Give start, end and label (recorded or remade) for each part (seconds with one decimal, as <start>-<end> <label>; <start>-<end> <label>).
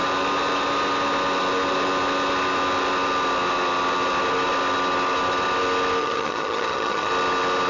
0.0-6.0 recorded; 6.0-7.1 remade; 7.1-7.7 recorded